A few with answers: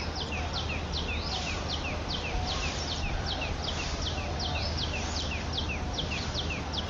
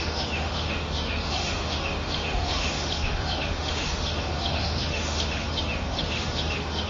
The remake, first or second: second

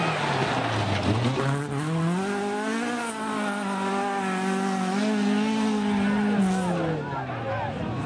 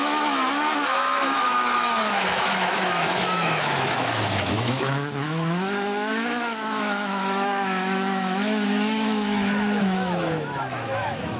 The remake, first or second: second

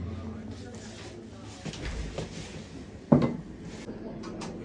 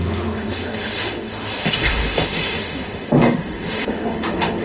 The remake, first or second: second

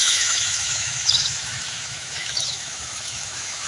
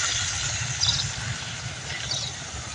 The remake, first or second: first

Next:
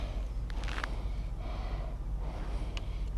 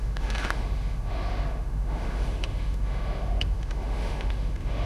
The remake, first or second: second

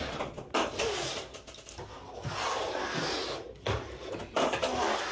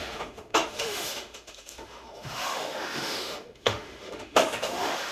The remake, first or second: second